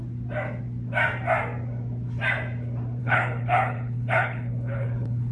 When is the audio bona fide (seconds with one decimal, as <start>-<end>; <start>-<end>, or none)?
0.0-3.0